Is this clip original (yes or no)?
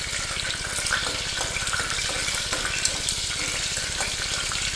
yes